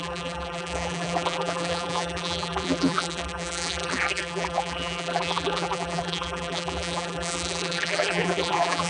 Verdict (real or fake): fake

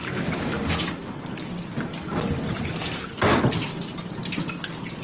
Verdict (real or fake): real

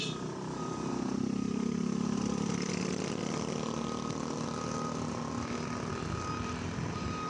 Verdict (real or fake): real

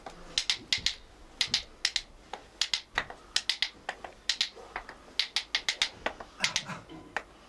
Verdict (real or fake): real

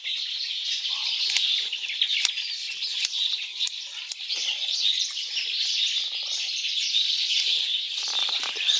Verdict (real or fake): real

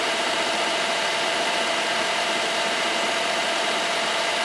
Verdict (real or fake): fake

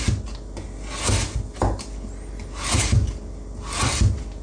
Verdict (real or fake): real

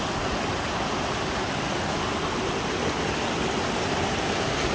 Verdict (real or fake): real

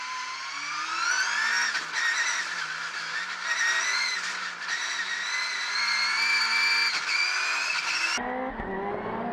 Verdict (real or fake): real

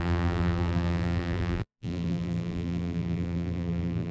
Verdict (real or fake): fake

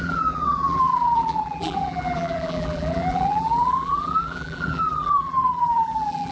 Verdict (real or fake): fake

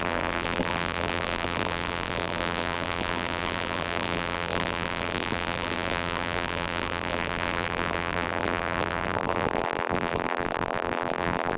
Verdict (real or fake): fake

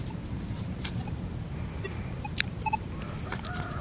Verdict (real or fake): fake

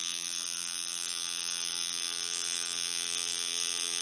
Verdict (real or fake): fake